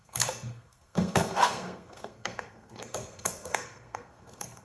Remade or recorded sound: remade